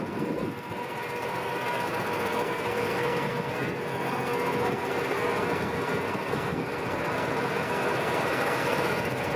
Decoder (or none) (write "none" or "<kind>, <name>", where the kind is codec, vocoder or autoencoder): codec, SNAC